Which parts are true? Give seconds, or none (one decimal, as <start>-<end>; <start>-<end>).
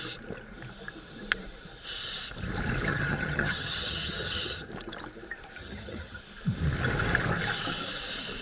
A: 0.0-2.9; 4.7-5.6; 6.2-8.4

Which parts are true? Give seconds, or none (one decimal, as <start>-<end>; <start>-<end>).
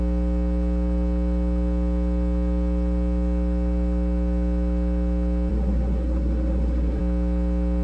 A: 0.0-5.5; 7.0-7.8